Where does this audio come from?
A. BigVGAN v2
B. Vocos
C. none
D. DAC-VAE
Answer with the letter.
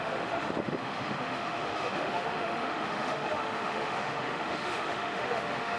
D